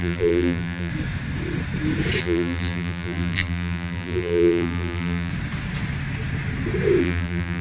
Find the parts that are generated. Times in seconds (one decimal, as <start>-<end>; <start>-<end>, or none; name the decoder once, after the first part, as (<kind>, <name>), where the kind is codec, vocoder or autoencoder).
0.0-0.9 (vocoder, BigVGAN v2); 2.2-5.3; 7.0-7.6